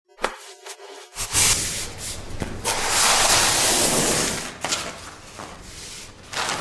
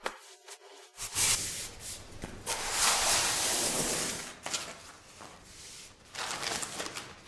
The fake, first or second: second